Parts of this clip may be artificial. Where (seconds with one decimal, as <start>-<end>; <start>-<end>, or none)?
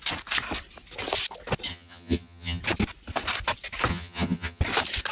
1.7-2.6; 3.9-4.6